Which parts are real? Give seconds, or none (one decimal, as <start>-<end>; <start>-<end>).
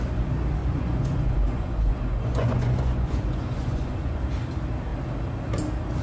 0.0-0.6; 4.2-6.0